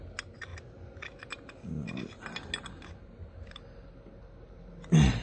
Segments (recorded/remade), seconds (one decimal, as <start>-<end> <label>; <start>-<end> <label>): 0.0-5.2 recorded